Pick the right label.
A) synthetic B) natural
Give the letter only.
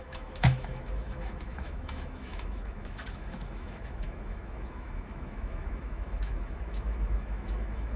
A